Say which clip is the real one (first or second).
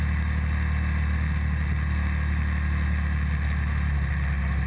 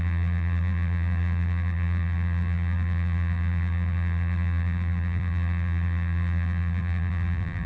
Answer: first